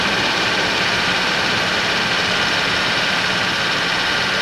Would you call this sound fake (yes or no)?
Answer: yes